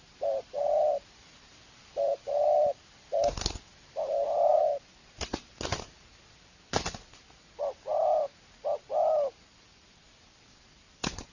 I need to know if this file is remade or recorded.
recorded